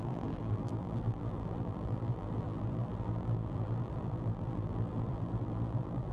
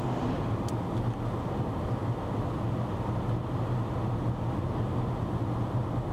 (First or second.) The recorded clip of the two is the second